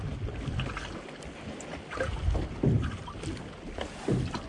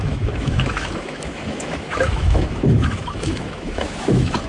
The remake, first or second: second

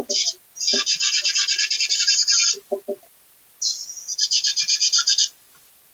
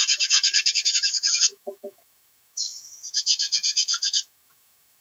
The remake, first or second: second